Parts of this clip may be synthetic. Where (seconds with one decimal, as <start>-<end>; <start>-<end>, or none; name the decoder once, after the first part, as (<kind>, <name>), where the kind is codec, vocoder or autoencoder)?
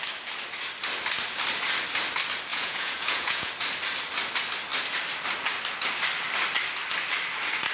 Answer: 2.5-3.5 (vocoder, Vocos)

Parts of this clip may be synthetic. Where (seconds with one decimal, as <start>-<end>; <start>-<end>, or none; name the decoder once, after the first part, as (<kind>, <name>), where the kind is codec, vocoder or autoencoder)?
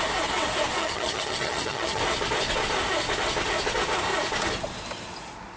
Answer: 0.8-2.0 (vocoder, HiFi-GAN)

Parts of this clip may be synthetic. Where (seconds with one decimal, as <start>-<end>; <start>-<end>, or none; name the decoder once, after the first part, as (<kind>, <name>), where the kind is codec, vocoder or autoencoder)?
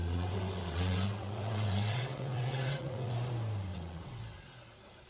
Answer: 0.0-3.1 (vocoder, WaveNeXt); 3.7-4.2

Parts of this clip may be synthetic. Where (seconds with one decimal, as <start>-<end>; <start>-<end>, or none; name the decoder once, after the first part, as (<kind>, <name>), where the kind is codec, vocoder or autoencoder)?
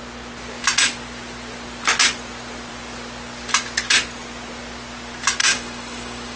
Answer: 5.4-6.4 (codec, DAC)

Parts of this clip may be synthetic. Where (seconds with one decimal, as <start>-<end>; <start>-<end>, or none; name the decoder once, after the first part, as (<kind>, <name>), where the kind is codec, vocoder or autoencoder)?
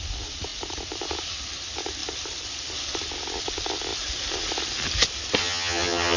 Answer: 5.4-6.2 (vocoder, HiFi-GAN)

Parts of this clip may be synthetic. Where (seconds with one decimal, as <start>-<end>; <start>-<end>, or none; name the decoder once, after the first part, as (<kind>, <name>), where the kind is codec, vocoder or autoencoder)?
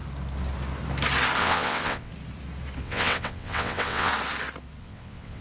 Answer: 1.4-2.1 (vocoder, WaveNeXt); 2.8-4.1; 4.8-5.4